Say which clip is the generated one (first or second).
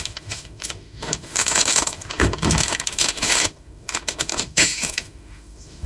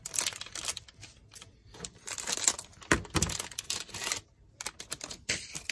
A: first